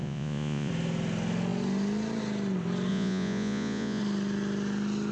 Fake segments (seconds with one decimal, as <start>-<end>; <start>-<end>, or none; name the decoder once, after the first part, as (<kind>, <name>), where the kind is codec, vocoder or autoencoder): 0.0-0.7 (vocoder, Vocos); 2.9-4.0